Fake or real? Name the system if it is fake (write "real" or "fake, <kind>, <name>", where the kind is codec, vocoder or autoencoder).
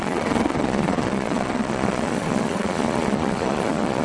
fake, vocoder, Vocos